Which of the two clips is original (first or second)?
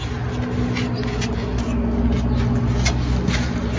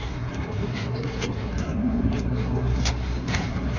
first